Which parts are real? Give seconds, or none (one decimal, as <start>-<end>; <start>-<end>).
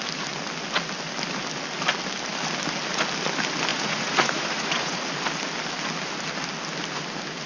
0.0-3.7; 5.1-7.5